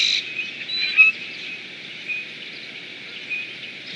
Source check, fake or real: real